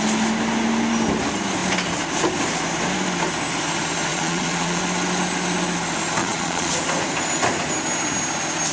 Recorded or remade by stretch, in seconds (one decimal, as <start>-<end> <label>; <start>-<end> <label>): 0.0-4.1 recorded; 4.1-4.8 remade; 4.8-6.2 recorded; 6.2-6.7 remade; 6.7-8.7 recorded